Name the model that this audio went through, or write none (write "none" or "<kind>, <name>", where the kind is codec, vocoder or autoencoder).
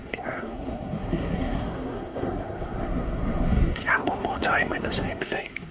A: codec, SNAC